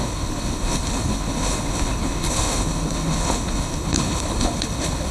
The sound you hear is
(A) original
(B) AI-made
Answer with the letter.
B